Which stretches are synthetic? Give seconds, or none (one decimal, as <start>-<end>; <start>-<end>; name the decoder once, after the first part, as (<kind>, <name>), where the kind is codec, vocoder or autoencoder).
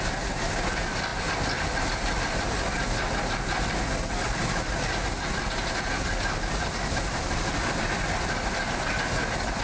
none